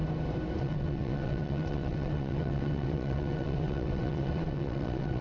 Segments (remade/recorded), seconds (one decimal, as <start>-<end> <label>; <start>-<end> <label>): 0.0-0.6 recorded; 0.6-5.2 remade